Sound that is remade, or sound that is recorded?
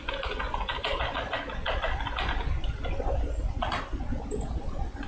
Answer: recorded